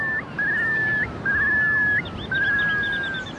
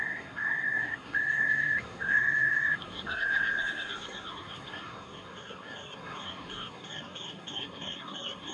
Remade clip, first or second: second